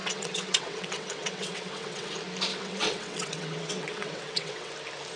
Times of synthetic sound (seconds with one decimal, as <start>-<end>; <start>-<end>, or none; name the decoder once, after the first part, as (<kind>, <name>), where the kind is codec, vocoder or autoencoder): 0.0-2.1 (vocoder, WaveNeXt); 2.5-4.7

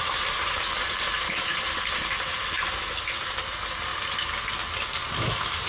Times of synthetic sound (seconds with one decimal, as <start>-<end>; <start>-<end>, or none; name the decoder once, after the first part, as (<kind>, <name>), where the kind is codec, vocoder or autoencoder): 0.0-3.4 (vocoder, BigVGAN v2)